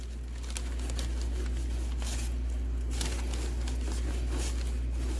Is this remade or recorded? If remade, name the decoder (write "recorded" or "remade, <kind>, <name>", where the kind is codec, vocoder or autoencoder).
recorded